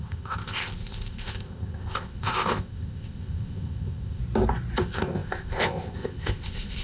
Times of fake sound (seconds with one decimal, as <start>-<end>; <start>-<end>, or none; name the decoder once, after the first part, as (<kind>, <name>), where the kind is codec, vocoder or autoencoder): 0.0-4.2 (codec, ZipCodec); 4.8-6.8